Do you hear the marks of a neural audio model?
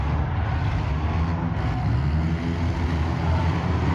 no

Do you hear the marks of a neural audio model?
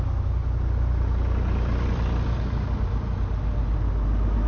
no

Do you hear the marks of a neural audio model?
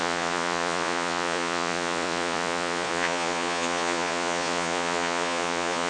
yes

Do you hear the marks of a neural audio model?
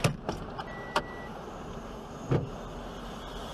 no